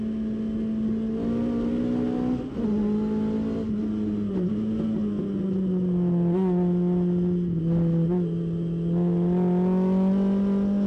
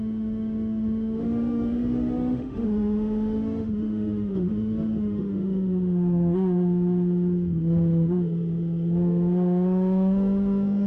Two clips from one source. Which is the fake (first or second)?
second